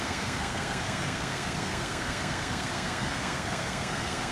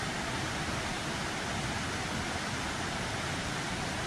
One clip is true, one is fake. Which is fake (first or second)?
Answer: first